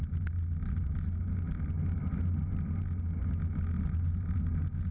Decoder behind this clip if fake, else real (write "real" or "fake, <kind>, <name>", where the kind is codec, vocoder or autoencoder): real